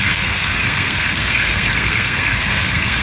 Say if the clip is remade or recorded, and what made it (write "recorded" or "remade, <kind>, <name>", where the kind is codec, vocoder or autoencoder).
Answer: remade, codec, SNAC